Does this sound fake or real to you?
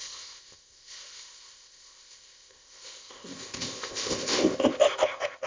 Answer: fake